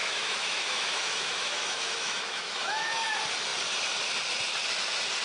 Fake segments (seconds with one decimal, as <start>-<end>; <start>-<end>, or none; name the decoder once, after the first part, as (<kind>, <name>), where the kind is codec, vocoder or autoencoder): 0.0-3.1 (autoencoder, DAC-VAE)